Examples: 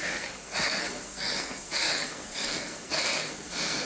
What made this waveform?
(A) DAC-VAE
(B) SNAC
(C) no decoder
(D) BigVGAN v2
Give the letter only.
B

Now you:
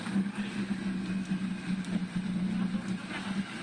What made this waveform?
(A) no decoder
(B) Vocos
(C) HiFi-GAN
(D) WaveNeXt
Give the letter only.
A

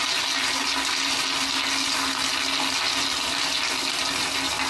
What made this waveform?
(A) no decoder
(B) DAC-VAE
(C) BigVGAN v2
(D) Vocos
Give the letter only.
A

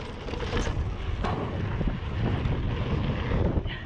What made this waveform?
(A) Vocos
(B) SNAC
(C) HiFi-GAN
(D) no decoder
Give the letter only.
D